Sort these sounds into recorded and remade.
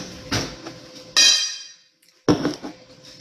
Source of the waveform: recorded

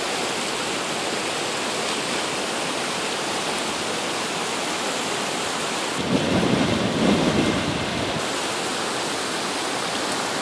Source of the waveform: recorded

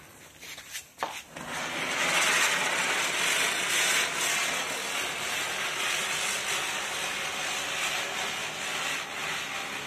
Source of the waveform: recorded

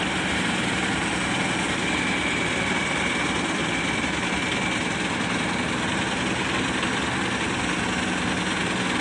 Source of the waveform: recorded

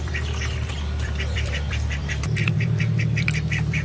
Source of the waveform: remade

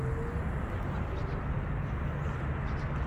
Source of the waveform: recorded